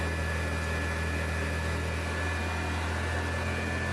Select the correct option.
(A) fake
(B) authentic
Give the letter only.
B